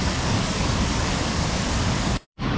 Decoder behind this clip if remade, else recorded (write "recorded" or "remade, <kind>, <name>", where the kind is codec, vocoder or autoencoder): remade, codec, DAC